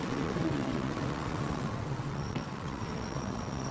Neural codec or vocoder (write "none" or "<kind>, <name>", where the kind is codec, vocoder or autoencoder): vocoder, WaveNeXt